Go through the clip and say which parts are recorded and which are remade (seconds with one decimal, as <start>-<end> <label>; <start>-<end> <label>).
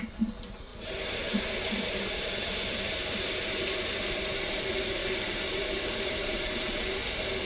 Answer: 0.0-0.7 recorded; 0.7-4.6 remade; 4.6-5.0 recorded; 5.0-6.9 remade; 6.9-7.4 recorded